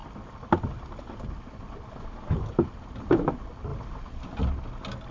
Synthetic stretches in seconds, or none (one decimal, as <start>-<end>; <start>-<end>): none